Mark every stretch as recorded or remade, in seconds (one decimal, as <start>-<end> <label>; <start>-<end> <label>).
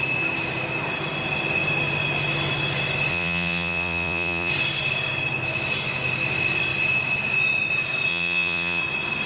0.0-3.1 recorded; 3.1-4.5 remade; 4.5-8.1 recorded; 8.1-8.8 remade; 8.8-9.3 recorded